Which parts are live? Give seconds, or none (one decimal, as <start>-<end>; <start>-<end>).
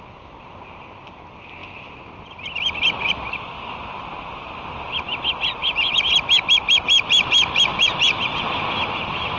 0.0-9.4